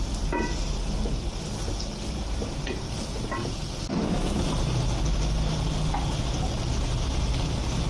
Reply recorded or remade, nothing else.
recorded